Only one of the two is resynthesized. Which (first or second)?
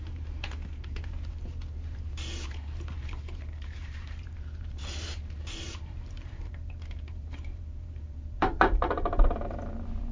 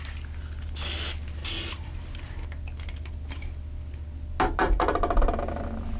first